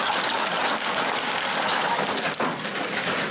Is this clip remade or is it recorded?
remade